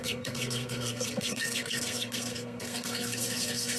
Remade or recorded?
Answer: remade